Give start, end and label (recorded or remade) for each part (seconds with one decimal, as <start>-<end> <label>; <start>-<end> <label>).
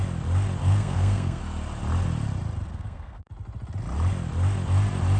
0.0-0.6 recorded; 0.6-1.4 remade; 1.4-2.7 recorded; 2.7-3.3 remade; 3.3-5.2 recorded